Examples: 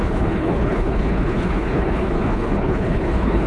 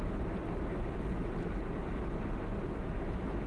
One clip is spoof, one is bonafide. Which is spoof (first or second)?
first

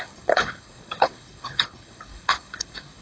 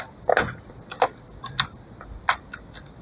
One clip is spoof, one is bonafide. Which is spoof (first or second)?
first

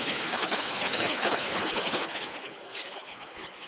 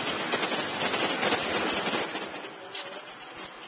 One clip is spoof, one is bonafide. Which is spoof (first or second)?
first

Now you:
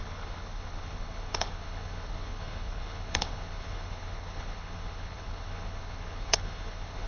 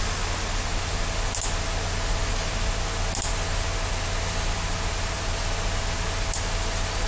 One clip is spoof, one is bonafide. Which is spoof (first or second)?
first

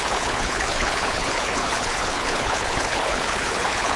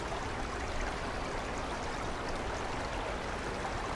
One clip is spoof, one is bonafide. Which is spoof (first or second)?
first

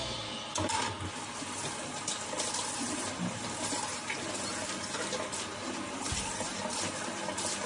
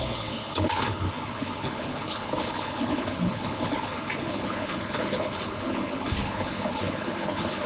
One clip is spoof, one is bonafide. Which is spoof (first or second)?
second